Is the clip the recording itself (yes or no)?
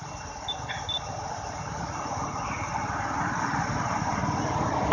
yes